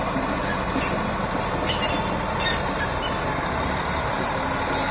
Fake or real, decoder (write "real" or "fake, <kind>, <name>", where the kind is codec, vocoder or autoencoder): real